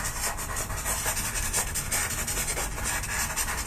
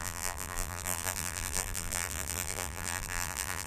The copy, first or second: second